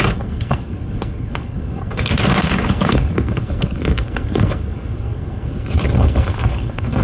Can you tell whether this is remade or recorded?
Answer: remade